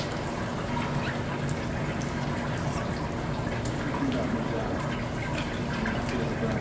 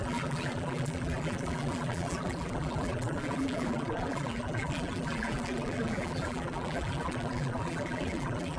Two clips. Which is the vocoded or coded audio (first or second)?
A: second